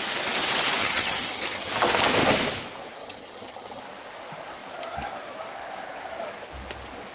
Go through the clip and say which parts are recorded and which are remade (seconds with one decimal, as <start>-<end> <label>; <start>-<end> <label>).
0.0-0.8 recorded; 0.8-1.7 remade; 1.7-3.0 recorded; 3.0-3.8 remade; 3.8-7.1 recorded